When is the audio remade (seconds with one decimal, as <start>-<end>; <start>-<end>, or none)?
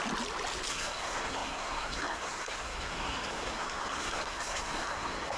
0.7-5.4